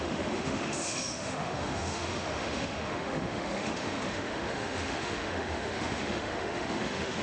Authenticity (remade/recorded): remade